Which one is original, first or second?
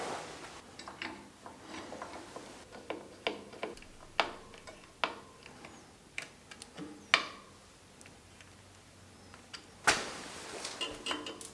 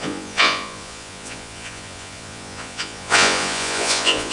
first